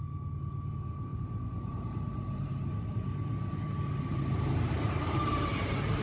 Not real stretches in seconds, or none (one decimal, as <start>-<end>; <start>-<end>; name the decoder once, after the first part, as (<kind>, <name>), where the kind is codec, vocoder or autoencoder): 1.1-3.4 (vocoder, BigVGAN v2); 4.1-6.0